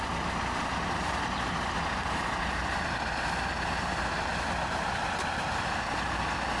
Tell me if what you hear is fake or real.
real